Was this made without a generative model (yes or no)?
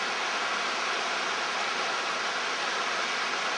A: yes